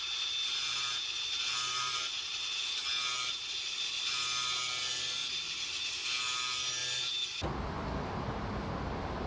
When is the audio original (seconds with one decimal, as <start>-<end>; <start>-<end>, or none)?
0.0-0.6; 2.9-9.3